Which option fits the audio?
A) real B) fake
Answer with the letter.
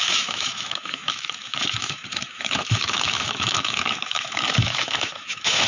B